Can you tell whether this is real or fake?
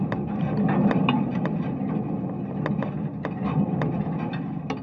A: real